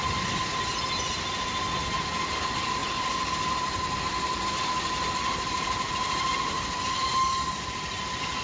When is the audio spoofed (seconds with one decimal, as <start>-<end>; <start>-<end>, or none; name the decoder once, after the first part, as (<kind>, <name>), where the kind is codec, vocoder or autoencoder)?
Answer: 2.8-7.5 (vocoder, BigVGAN v2)